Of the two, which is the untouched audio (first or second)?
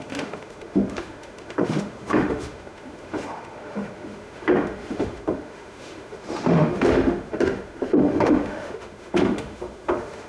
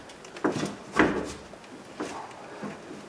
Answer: second